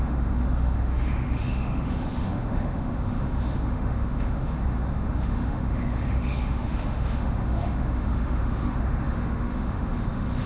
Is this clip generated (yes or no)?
yes